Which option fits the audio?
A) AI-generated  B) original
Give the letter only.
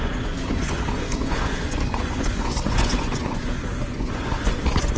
A